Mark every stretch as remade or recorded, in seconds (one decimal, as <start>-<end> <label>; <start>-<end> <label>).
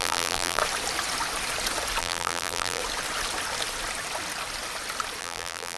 0.0-0.6 remade; 0.6-2.0 recorded; 2.0-2.8 remade; 2.8-5.2 recorded; 5.2-5.8 remade